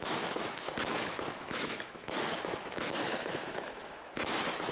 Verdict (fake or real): fake